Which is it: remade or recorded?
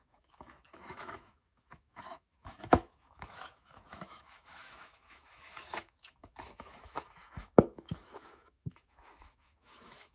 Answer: remade